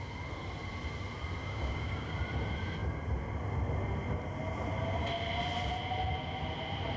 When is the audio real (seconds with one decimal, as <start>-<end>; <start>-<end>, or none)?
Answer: 0.0-1.4; 2.2-7.0